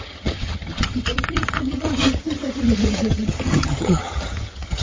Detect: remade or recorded remade